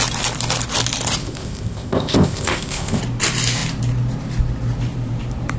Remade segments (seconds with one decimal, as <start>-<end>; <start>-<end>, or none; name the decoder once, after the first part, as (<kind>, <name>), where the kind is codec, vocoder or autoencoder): 1.2-3.0 (codec, ZipCodec)